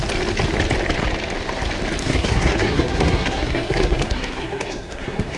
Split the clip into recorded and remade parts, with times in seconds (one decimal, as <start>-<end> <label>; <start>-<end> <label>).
0.0-2.0 recorded; 2.0-5.4 remade